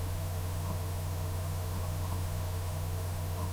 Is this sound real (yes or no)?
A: no